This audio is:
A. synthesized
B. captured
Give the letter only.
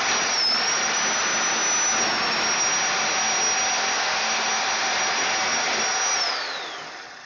B